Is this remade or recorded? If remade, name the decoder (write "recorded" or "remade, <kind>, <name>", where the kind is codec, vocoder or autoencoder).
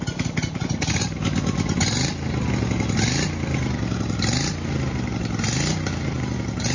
recorded